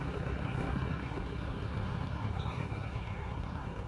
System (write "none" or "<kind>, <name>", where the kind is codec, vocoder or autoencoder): codec, SNAC